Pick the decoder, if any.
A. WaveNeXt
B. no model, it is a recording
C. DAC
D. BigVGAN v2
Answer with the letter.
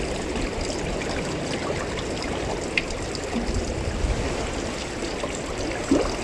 B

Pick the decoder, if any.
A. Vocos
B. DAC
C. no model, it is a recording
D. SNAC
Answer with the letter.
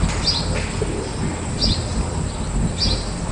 C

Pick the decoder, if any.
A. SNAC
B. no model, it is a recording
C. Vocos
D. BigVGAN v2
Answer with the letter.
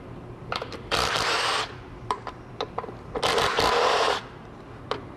D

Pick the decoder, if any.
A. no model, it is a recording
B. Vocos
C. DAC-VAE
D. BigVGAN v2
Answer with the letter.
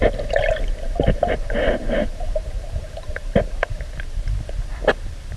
D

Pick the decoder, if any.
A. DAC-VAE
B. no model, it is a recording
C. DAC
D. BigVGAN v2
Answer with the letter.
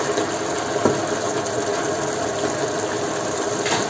B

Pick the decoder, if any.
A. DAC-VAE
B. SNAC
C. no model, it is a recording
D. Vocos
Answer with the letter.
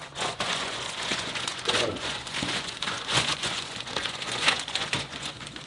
D